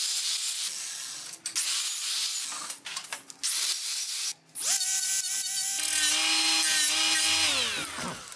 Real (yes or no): yes